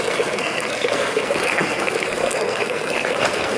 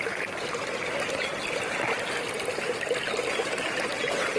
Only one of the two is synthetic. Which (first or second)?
first